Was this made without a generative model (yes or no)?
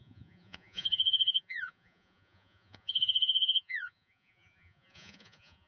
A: no